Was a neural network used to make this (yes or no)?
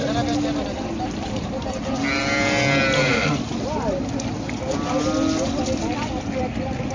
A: no